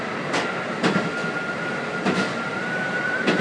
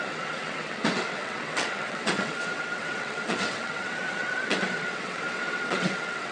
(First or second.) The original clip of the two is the first